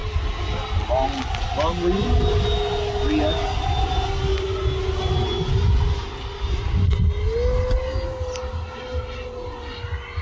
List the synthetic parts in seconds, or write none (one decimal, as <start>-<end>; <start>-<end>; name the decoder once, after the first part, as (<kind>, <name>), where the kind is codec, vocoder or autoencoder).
none